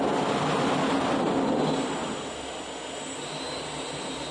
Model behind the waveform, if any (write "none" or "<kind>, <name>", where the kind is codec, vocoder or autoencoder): none